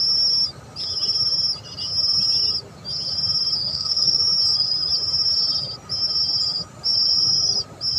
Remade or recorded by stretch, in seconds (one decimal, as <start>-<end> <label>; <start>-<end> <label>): 0.0-3.7 recorded; 3.7-4.2 remade; 4.2-8.0 recorded

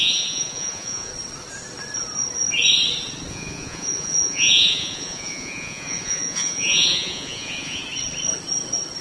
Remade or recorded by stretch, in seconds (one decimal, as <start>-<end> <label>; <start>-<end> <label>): 0.0-1.1 remade; 1.1-3.3 recorded; 3.3-7.8 remade; 7.8-9.0 recorded

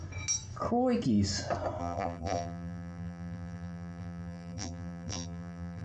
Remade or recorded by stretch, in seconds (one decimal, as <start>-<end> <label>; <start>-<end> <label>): 0.0-1.8 recorded; 1.8-5.8 remade

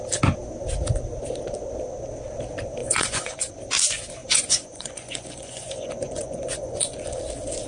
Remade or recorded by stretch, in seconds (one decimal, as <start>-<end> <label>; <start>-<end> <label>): 0.0-2.8 recorded; 2.8-3.5 remade; 3.5-4.2 recorded; 4.2-7.2 remade; 7.2-7.7 recorded

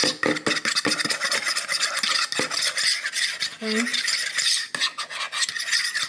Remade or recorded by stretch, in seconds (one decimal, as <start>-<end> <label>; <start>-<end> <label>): 0.0-6.1 recorded

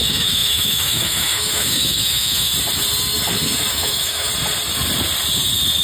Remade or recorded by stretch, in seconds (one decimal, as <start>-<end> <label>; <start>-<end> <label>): 0.0-2.5 remade; 2.5-3.7 recorded; 3.7-4.3 remade; 4.3-5.8 recorded